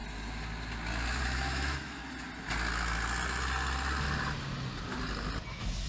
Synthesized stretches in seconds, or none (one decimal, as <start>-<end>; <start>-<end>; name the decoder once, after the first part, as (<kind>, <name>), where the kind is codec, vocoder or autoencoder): 1.2-2.0 (autoencoder, DAC-VAE); 5.5-5.9